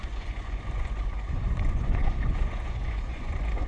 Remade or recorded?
remade